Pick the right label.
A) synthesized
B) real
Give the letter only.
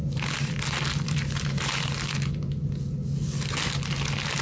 B